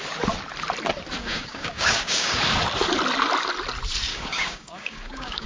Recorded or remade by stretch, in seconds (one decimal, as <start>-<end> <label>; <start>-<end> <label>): 0.0-1.2 recorded; 1.2-2.4 remade; 2.4-4.1 recorded; 4.1-5.5 remade